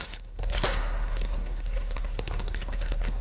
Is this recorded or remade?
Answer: remade